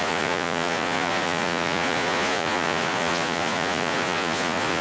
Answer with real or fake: fake